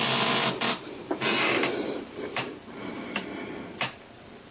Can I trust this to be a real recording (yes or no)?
no